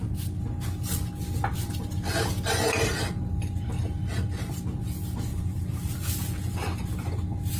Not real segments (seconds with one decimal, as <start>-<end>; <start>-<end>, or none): 5.3-6.1